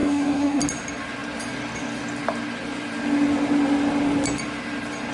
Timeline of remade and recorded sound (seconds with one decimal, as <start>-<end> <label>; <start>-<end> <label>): 0.0-0.6 remade; 0.6-5.1 recorded